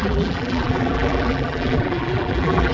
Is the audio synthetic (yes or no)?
yes